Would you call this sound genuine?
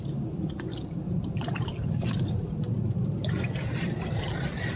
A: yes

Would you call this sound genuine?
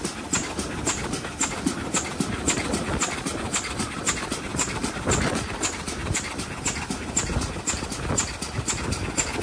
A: yes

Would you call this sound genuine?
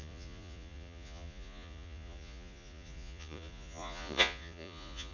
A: no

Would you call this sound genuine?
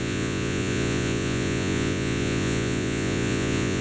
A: no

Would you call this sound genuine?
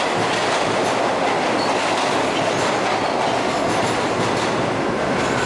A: yes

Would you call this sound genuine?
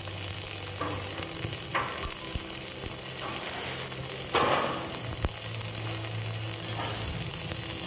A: yes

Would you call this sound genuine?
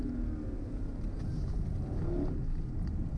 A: yes